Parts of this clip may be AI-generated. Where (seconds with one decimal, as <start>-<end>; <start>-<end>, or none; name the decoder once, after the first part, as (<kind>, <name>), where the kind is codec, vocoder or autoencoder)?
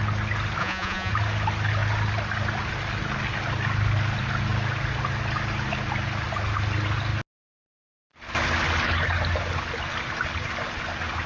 0.6-1.1 (vocoder, Vocos)